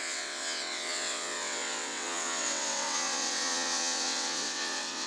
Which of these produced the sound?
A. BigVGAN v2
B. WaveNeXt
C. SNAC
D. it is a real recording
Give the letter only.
B